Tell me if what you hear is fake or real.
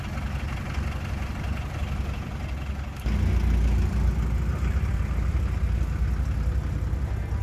real